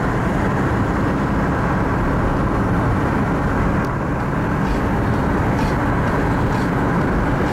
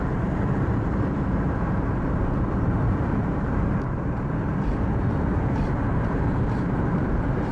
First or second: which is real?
first